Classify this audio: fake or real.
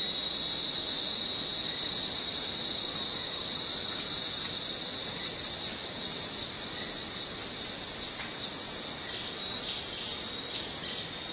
real